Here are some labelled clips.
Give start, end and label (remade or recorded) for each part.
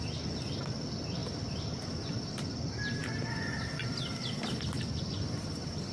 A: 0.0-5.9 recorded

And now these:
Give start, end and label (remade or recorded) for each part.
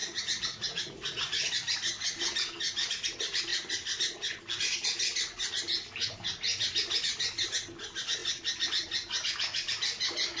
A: 0.0-1.5 remade; 1.5-10.4 recorded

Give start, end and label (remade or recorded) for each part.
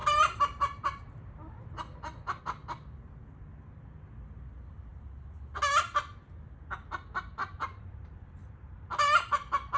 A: 0.0-2.4 remade; 2.4-7.4 recorded; 7.4-8.9 remade; 8.9-9.8 recorded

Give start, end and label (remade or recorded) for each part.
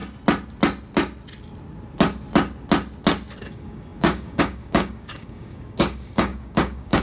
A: 0.0-3.4 recorded; 3.4-7.0 remade